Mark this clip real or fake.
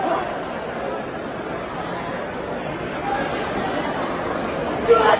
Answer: real